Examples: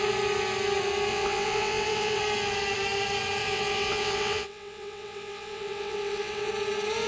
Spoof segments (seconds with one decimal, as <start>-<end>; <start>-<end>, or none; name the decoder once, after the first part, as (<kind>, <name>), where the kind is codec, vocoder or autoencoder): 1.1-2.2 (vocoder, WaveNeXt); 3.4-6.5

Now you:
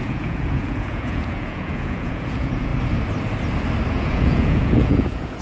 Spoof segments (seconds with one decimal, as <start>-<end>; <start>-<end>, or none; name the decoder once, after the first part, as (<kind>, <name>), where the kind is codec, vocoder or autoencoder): 0.0-2.7 (vocoder, Vocos); 3.9-5.4

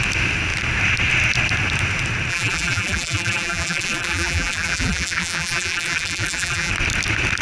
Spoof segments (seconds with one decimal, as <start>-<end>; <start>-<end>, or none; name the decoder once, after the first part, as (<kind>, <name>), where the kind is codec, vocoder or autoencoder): 2.3-6.7 (vocoder, BigVGAN v2)

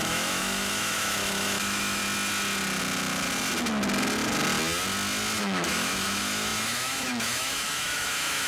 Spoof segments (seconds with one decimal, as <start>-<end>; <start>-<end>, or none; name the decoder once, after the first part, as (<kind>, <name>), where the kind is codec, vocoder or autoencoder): 0.0-2.0 (autoencoder, DAC-VAE); 5.4-8.5